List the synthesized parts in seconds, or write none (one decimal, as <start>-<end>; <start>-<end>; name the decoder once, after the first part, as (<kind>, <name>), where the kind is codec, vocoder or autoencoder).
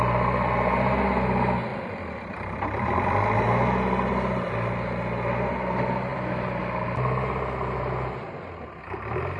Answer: 1.7-3.4 (vocoder, BigVGAN v2); 6.1-8.8